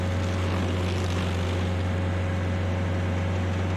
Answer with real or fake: real